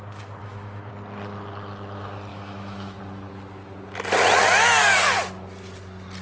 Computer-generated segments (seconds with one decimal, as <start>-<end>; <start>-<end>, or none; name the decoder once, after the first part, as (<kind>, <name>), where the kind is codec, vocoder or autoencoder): 0.4-0.9 (autoencoder, DAC-VAE); 2.3-3.0